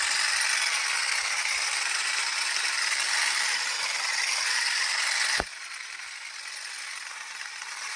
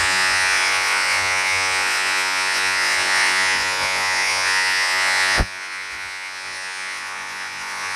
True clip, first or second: first